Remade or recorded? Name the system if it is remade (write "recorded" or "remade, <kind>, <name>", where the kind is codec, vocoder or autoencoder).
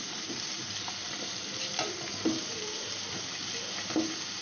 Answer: recorded